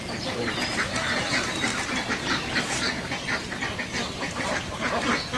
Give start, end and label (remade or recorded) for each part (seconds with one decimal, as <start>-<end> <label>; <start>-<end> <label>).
0.0-1.7 remade; 1.7-4.5 recorded; 4.5-5.4 remade